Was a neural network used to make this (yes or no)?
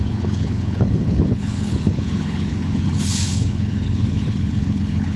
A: yes